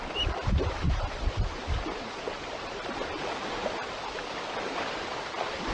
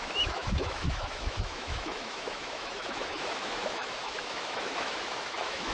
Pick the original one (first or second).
first